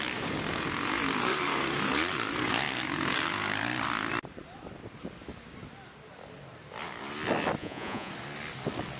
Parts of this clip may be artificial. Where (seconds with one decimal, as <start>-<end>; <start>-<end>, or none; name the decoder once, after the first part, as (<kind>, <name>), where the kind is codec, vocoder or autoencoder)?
7.6-8.1 (vocoder, Vocos)